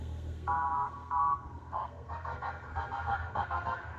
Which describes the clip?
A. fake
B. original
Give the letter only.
A